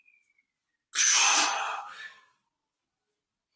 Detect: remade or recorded recorded